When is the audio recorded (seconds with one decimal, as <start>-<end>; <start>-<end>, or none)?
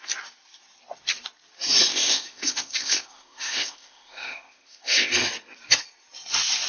0.0-1.9; 5.1-6.7